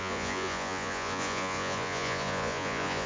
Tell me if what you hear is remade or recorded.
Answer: remade